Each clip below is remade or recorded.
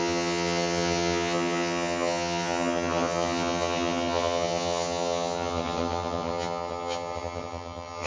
remade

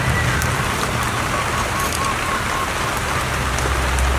recorded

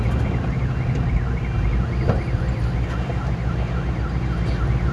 recorded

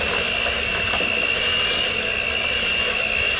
recorded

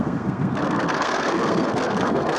remade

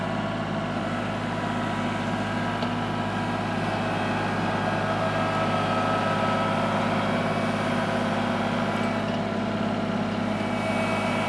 recorded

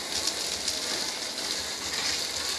recorded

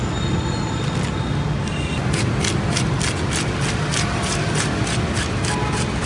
recorded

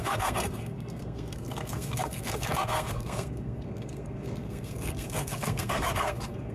remade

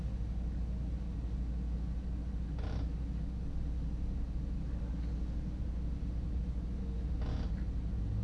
recorded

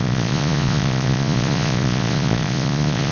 remade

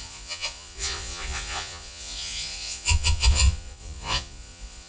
remade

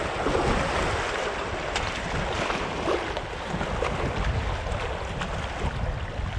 recorded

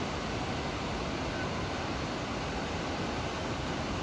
recorded